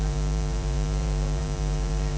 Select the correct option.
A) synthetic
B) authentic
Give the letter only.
A